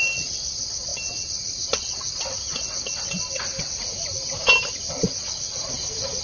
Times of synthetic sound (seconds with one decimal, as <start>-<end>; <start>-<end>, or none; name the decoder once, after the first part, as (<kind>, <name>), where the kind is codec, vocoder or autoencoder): none